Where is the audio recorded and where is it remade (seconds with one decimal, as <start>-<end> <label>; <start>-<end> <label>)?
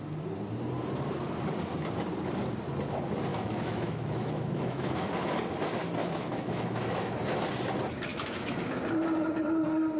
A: 0.0-3.3 recorded; 3.3-5.3 remade; 5.3-6.0 recorded; 6.0-7.1 remade; 7.1-8.1 recorded; 8.1-8.8 remade; 8.8-10.0 recorded